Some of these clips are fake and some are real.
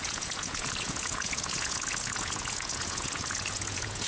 fake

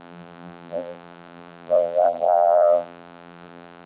fake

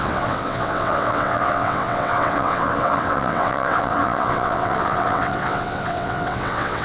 fake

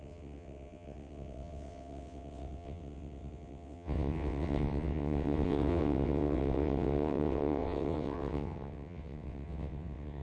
fake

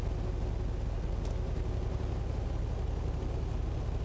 real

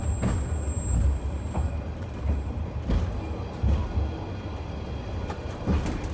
real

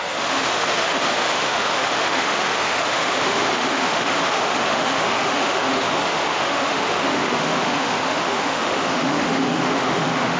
fake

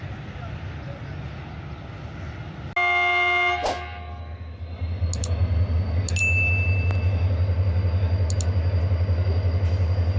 real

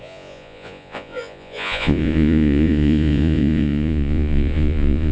fake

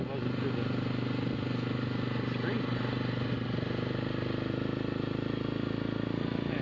real